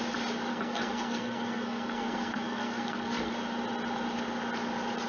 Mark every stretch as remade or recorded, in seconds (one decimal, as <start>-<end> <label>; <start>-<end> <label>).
0.0-0.5 recorded; 0.5-3.3 remade; 3.3-5.1 recorded